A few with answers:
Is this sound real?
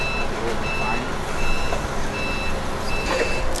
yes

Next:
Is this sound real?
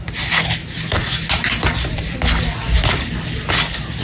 yes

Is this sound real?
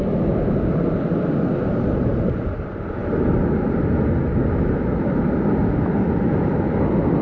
yes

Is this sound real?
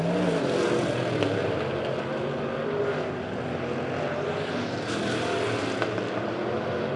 yes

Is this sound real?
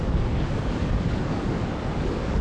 no